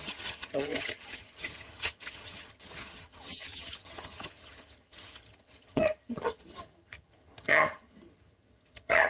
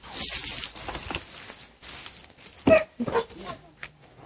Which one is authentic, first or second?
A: second